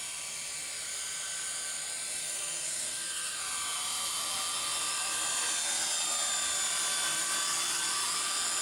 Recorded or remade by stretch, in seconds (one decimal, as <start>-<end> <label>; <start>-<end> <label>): 0.0-2.2 recorded; 2.2-3.4 remade; 3.4-8.6 recorded

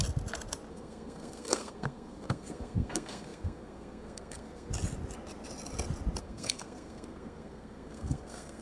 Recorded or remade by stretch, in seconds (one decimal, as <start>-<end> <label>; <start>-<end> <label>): 0.0-0.7 recorded; 0.7-4.7 remade; 4.7-6.2 recorded; 6.2-8.6 remade

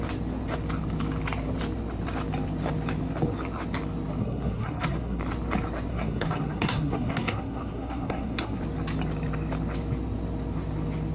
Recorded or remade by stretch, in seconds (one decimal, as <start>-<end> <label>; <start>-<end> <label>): 0.0-4.2 recorded; 4.2-5.2 remade; 5.2-5.9 recorded; 5.9-8.6 remade; 8.6-11.1 recorded

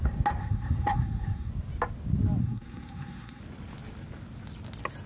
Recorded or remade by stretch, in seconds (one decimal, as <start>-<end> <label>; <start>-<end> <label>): 0.0-0.4 recorded; 0.4-1.5 remade; 1.5-2.4 recorded; 2.4-3.4 remade; 3.4-5.1 recorded